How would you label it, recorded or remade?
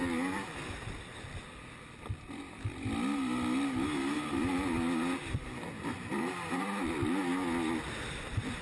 recorded